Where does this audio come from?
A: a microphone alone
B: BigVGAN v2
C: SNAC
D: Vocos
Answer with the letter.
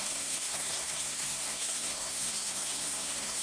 C